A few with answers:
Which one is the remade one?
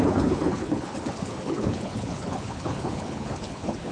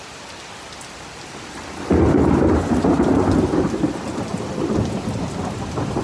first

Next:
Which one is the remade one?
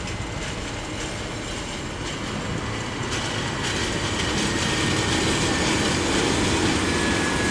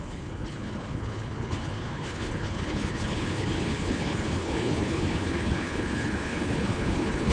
second